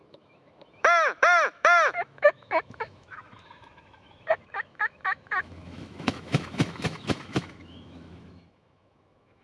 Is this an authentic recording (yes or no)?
no